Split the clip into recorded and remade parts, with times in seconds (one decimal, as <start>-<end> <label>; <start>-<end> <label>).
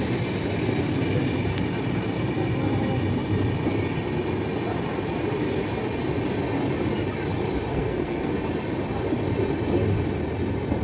0.0-7.7 recorded; 7.7-8.3 remade; 8.3-10.8 recorded